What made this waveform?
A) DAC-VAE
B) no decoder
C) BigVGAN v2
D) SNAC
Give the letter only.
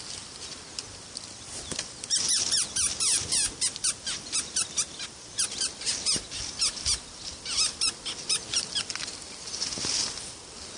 B